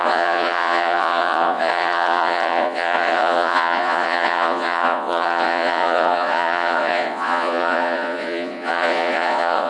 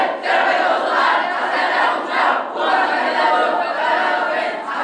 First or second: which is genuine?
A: second